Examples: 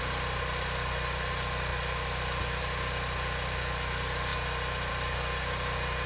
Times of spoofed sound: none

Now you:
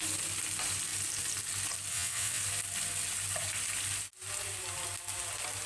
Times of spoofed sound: 1.9-2.4 (vocoder, WaveNeXt)

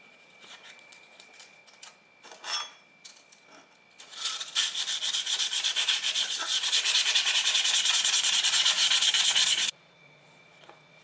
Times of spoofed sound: 0.0-1.6 (vocoder, Vocos); 4.0-4.6; 5.1-11.0

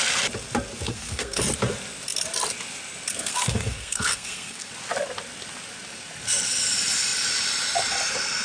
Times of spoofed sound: 0.9-1.4 (codec, SNAC); 3.1-4.7